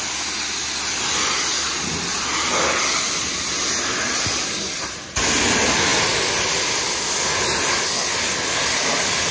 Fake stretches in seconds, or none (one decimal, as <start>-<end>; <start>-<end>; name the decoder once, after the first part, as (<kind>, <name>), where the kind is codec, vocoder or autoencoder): none